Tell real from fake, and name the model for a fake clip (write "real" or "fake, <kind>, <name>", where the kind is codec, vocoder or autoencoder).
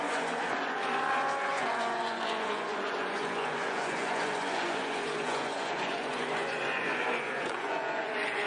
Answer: fake, vocoder, Vocos